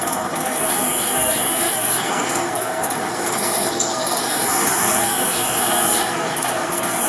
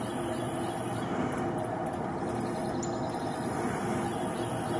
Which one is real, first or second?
second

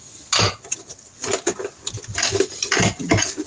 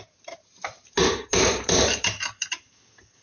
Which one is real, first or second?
first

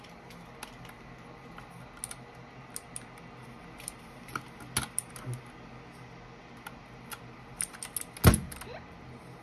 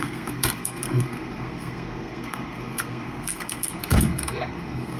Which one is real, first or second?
first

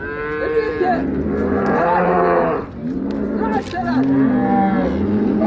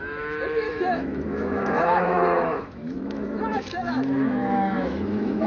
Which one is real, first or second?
first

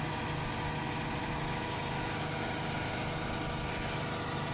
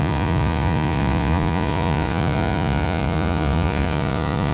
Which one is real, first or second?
first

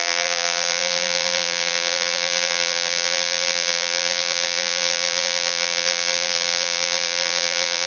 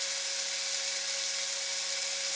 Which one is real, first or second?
second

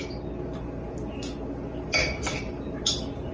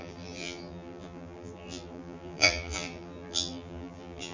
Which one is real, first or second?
first